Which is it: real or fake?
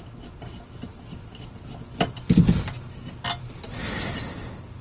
real